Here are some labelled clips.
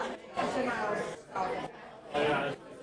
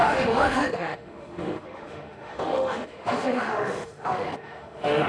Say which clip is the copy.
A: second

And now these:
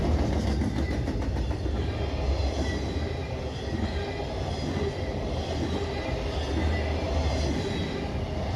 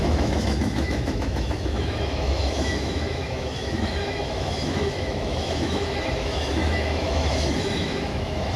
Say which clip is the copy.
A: second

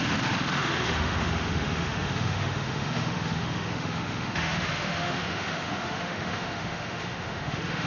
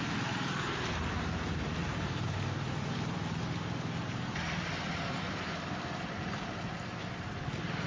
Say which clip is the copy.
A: first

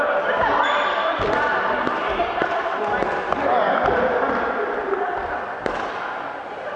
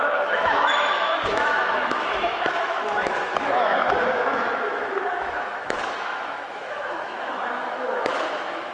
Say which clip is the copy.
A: second